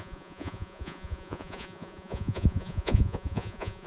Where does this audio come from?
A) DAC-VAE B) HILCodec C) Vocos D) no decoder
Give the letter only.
C